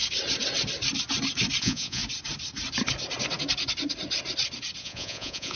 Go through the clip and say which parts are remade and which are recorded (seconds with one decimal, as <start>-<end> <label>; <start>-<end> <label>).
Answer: 0.0-1.6 recorded; 1.6-2.0 remade; 2.0-4.8 recorded; 4.8-5.6 remade